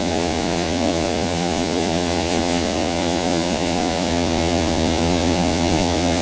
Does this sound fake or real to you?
fake